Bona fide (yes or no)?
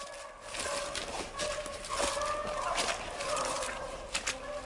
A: yes